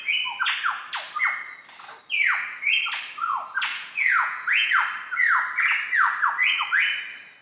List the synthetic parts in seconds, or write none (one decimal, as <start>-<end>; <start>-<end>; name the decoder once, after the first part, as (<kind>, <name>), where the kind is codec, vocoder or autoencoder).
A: 3.7-4.7 (vocoder, Vocos)